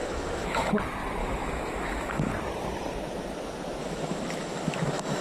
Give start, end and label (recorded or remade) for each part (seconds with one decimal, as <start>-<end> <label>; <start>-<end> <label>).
0.0-0.7 remade; 0.7-1.2 recorded; 1.2-2.3 remade; 2.3-3.8 recorded; 3.8-5.2 remade